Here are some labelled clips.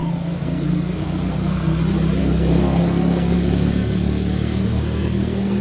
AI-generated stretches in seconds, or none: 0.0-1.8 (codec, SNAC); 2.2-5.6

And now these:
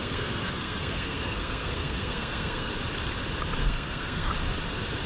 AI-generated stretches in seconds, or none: 0.0-2.7 (codec, SNAC); 3.6-4.3

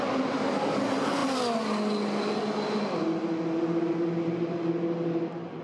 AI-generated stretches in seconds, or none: none